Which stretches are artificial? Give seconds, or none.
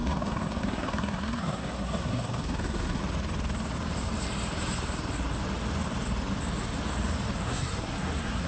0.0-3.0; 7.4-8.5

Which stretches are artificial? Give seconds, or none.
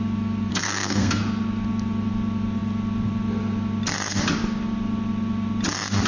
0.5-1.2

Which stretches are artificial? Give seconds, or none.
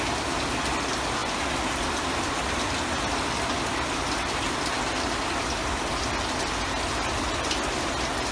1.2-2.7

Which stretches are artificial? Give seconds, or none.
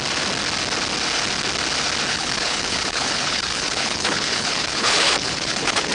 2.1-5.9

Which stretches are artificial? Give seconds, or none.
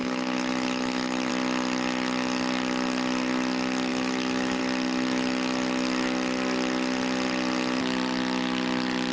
0.0-1.3; 3.9-4.6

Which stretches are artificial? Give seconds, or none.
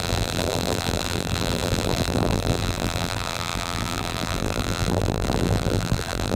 0.0-6.4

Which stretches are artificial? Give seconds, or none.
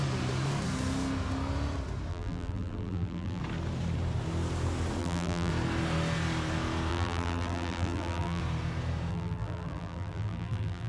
2.1-3.4; 5.0-5.5; 6.9-8.4; 9.1-10.9